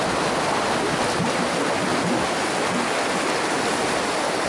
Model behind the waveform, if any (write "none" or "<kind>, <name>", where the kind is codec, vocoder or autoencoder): none